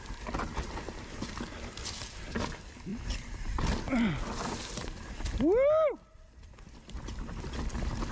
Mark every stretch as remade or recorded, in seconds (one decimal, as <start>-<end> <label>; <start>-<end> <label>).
0.0-8.1 recorded